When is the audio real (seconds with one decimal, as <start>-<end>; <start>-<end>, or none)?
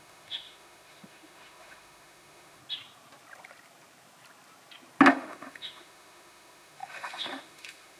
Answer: 2.6-5.1